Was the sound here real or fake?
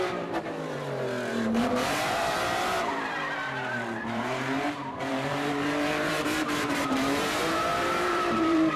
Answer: fake